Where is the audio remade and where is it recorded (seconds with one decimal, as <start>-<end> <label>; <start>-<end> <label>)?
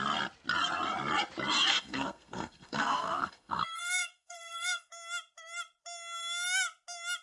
0.0-1.7 recorded; 1.7-4.9 remade; 4.9-7.2 recorded